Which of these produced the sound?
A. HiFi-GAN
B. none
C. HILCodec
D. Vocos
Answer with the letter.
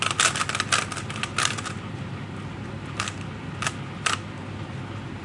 B